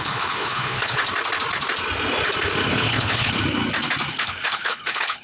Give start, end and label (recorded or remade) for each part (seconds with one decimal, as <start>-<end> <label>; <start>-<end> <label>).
0.0-1.0 remade; 1.0-2.7 recorded; 2.7-3.4 remade; 3.4-4.1 recorded; 4.1-5.2 remade